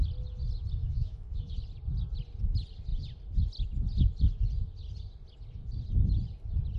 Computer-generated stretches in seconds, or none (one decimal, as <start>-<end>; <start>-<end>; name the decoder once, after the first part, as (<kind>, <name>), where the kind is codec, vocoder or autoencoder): 0.8-1.5 (autoencoder, DAC-VAE)